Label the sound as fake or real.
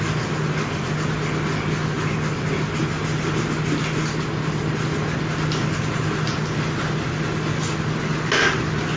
real